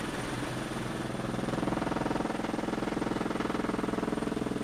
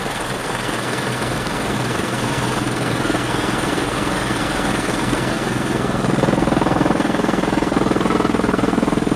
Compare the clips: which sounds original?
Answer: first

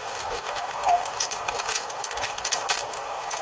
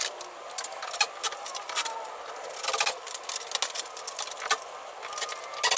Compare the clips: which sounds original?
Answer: second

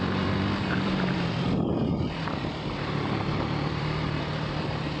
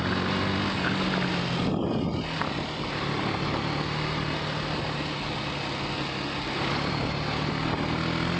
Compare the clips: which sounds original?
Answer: second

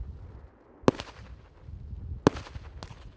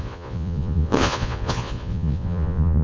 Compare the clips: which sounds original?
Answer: first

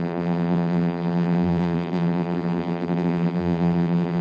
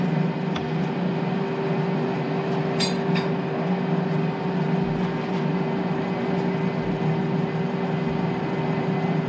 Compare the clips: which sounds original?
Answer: second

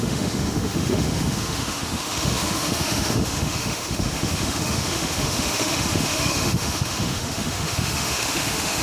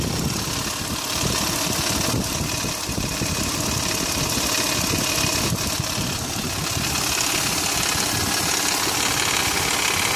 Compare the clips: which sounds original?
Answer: second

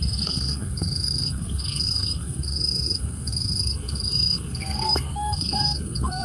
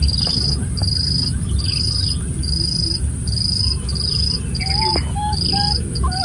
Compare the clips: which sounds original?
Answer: second